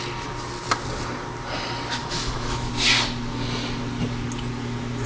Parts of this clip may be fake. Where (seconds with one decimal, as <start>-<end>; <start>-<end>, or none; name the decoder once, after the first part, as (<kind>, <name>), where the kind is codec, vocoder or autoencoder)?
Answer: 2.0-2.7 (autoencoder, DAC-VAE)